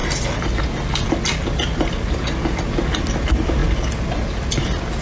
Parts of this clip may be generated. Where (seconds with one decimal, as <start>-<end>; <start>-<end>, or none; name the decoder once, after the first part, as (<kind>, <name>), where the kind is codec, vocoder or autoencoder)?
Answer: none

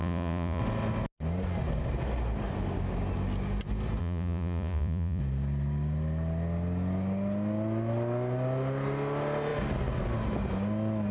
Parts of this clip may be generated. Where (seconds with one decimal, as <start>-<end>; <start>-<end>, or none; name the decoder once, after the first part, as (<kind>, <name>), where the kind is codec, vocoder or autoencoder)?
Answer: 0.0-0.6 (vocoder, Vocos); 4.0-5.2

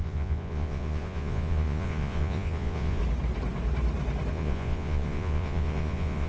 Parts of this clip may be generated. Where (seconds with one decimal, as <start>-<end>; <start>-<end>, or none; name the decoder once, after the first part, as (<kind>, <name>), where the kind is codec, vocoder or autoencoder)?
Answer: 0.0-3.0 (vocoder, Vocos); 4.3-6.3